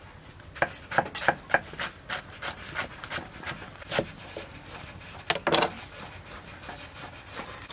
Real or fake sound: real